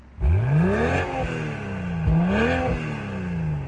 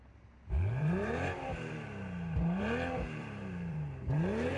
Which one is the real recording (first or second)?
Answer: first